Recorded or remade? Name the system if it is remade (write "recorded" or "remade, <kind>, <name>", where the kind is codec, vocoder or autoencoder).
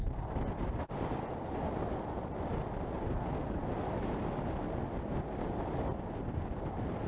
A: recorded